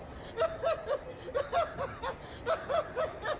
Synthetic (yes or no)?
no